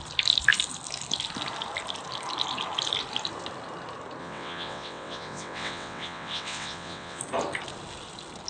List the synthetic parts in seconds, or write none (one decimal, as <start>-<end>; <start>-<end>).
4.2-7.2